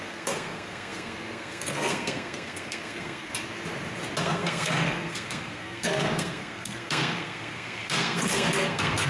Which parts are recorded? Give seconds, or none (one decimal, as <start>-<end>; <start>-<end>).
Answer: 3.3-4.2